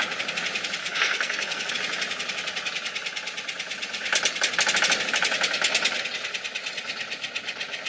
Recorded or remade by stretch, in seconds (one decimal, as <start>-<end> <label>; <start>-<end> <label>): 0.0-0.8 recorded; 0.8-1.7 remade; 1.7-7.9 recorded